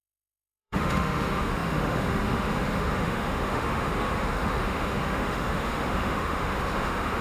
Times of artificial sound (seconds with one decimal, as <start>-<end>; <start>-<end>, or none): 0.0-7.2